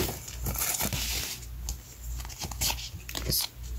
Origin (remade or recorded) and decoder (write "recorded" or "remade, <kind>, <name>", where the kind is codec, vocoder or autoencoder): recorded